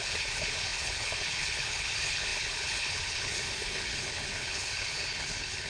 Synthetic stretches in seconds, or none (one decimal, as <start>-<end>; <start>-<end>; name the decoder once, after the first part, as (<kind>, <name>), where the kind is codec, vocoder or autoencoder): 0.0-5.7 (codec, HILCodec)